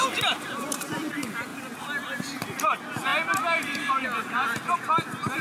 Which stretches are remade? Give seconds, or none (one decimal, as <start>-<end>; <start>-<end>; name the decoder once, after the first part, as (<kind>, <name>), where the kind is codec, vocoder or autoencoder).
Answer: none